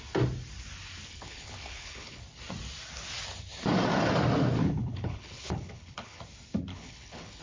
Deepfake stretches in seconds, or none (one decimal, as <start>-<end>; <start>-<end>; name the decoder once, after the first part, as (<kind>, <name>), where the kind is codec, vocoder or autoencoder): 1.1-2.2 (codec, HILCodec); 4.6-6.2; 6.7-7.4